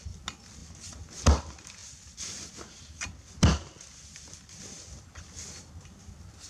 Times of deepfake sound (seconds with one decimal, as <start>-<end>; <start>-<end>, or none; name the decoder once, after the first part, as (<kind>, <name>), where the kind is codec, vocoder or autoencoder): none